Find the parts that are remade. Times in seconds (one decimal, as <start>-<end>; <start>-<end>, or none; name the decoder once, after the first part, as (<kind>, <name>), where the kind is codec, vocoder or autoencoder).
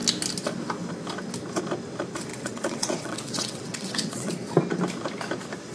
2.3-4.3 (vocoder, WaveNeXt)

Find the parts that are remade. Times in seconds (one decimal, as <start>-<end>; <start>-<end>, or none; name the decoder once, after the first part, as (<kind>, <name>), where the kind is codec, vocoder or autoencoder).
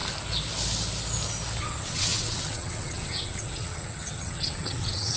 1.6-5.2 (vocoder, WaveNeXt)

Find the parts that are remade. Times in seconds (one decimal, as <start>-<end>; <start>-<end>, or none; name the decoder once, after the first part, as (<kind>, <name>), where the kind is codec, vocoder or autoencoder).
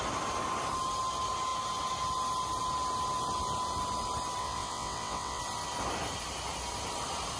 4.4-5.4 (vocoder, WaveNeXt)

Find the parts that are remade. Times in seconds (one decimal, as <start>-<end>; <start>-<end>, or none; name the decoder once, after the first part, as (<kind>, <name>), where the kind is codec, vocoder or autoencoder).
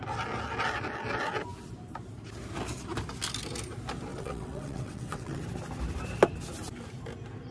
4.1-5.4 (vocoder, WaveNeXt)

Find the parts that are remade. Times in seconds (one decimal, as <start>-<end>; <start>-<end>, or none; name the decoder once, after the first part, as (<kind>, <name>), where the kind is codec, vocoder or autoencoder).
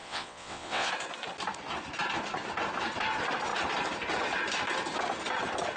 0.0-0.9 (vocoder, WaveNeXt)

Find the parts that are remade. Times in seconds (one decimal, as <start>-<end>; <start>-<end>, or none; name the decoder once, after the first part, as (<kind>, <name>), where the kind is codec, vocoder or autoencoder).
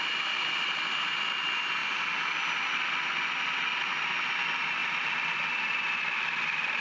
none